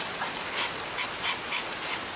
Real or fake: real